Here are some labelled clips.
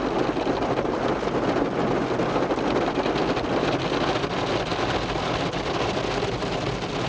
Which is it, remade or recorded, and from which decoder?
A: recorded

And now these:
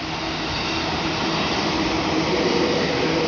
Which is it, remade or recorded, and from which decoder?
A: recorded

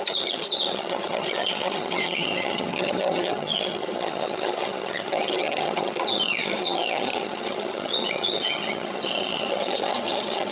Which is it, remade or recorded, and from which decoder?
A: remade, vocoder, HiFi-GAN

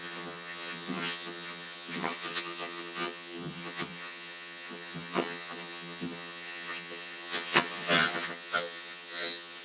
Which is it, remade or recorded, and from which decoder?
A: remade, vocoder, HiFi-GAN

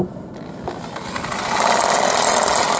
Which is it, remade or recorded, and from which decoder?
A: recorded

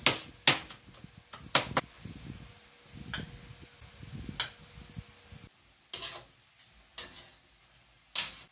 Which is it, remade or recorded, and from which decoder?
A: recorded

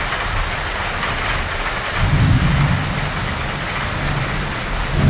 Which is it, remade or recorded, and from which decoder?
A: recorded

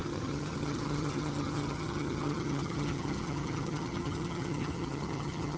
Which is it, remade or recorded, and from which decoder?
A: remade, vocoder, HiFi-GAN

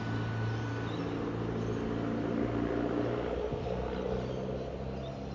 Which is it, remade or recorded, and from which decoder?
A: recorded